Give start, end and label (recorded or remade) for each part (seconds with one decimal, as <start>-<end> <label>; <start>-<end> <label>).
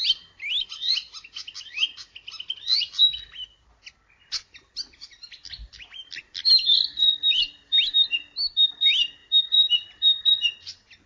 0.0-11.1 recorded